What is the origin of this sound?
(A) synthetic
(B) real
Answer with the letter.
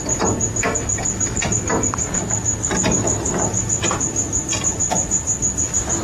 B